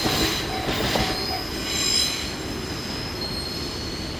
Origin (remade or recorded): recorded